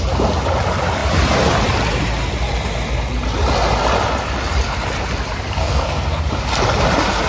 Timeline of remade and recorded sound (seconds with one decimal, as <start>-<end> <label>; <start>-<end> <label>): 0.0-5.6 recorded; 5.6-6.2 remade; 6.2-7.3 recorded